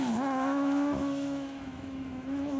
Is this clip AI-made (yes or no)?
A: yes